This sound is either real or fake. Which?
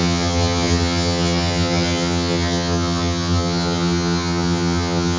fake